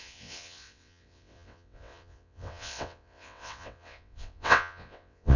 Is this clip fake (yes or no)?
yes